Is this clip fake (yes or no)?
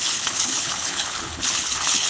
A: yes